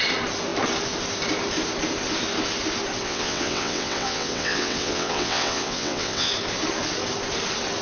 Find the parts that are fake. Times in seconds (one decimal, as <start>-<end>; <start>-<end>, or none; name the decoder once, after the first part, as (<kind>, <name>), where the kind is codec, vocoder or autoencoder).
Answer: 3.0-6.3 (vocoder, WaveNeXt)